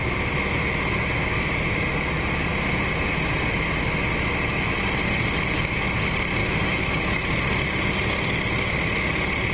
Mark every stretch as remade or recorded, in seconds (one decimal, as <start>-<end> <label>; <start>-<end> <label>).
0.0-6.4 recorded; 6.4-7.0 remade; 7.0-9.5 recorded